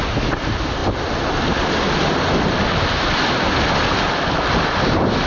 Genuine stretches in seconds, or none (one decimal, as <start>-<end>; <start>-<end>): 0.0-5.3